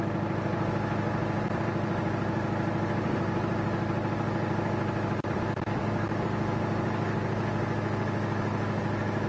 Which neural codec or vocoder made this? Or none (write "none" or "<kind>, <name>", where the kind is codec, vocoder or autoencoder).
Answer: none